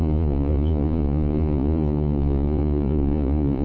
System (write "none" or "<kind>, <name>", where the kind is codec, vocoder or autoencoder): vocoder, Vocos